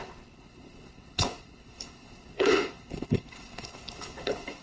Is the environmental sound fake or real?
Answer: fake